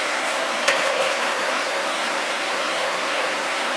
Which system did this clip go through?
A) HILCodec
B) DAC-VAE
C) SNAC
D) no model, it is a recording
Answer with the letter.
C